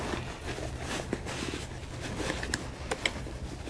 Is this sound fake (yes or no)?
no